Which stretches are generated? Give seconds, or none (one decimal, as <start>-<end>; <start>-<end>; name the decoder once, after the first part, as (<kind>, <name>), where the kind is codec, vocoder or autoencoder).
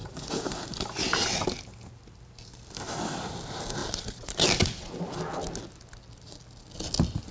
0.0-0.6 (vocoder, Vocos)